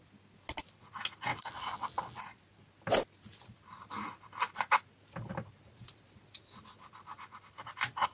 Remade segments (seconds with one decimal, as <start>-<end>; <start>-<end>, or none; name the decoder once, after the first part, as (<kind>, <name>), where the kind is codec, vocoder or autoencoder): 1.3-2.2 (vocoder, WaveNeXt)